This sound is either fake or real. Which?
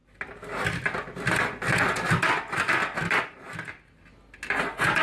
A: real